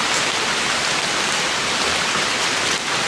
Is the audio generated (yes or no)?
no